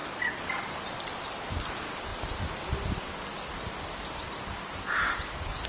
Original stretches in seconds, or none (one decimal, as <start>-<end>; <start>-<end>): 0.0-5.7